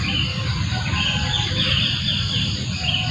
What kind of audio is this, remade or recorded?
recorded